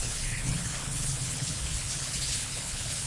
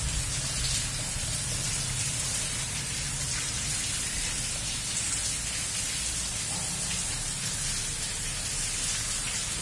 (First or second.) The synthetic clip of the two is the first